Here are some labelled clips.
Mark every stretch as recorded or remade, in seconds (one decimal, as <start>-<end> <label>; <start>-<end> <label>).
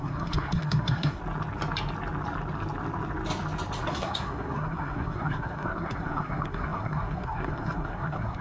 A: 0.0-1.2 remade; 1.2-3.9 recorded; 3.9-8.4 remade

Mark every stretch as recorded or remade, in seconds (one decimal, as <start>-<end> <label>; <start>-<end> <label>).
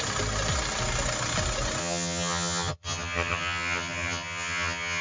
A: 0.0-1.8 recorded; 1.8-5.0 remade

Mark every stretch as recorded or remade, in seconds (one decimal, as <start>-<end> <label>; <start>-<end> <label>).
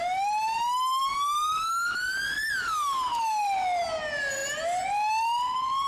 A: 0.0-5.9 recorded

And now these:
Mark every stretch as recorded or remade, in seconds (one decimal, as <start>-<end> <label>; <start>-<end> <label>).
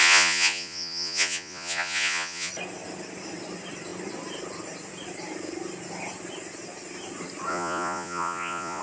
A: 0.0-2.5 remade; 2.5-7.5 recorded; 7.5-8.8 remade